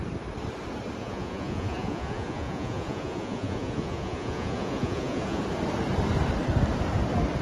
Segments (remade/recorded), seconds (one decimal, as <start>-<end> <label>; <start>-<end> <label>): 0.0-1.0 recorded; 1.0-5.4 remade; 5.4-7.4 recorded